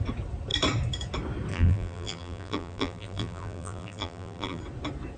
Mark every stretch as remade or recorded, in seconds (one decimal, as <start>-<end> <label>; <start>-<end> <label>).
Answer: 0.0-1.5 recorded; 1.5-4.6 remade; 4.6-5.2 recorded